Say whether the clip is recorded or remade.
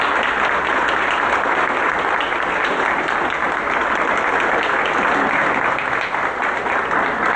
recorded